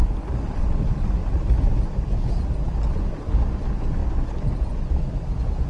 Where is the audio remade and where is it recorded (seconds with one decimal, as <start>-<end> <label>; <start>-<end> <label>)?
0.0-0.6 remade; 0.6-5.7 recorded